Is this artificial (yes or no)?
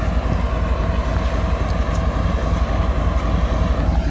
no